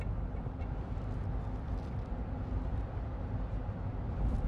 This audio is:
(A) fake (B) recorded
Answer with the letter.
B